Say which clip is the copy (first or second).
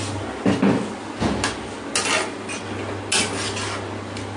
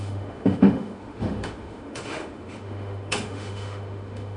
second